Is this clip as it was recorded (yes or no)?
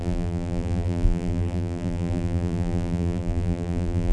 no